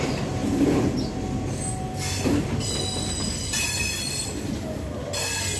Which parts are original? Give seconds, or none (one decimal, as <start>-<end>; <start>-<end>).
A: 0.0-5.6